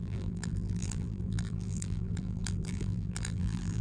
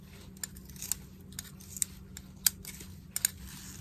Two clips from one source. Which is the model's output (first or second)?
first